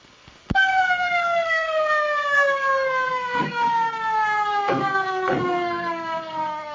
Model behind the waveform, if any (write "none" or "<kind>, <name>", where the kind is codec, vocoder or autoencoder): codec, SNAC